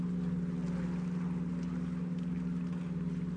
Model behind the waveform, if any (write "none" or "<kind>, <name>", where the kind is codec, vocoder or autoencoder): none